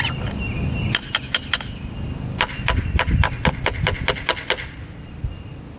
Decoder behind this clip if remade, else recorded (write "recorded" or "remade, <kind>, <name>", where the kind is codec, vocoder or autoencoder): recorded